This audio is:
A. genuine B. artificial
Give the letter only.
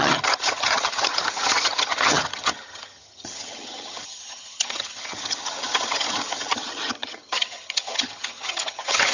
B